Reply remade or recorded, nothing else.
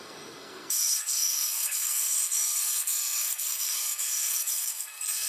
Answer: remade